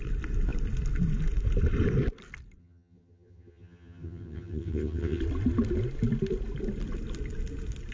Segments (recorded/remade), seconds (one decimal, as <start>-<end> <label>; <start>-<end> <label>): 0.0-2.6 recorded; 2.6-5.2 remade; 5.2-7.9 recorded